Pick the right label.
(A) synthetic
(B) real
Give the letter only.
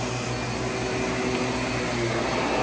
B